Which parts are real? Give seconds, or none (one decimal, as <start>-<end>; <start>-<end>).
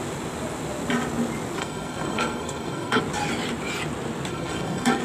0.0-1.6; 3.0-4.3